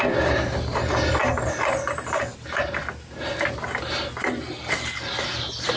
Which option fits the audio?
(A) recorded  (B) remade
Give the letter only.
A